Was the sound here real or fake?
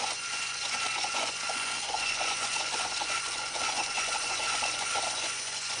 fake